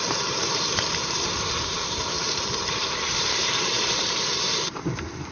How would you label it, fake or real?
fake